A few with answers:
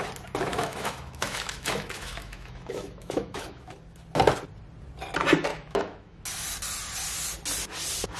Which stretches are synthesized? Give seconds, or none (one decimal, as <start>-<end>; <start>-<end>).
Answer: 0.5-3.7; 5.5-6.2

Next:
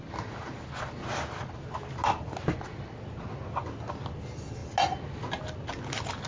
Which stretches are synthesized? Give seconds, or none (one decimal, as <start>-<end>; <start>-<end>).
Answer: none

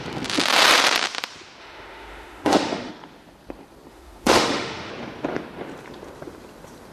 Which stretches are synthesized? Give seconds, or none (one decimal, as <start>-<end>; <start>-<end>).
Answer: 1.6-2.9; 3.9-4.9